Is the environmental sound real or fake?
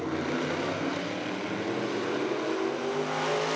real